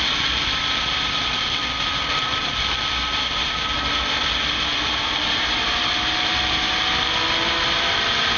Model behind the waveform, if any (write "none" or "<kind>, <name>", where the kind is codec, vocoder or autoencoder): none